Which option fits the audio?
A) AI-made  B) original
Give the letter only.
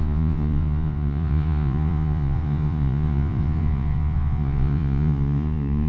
A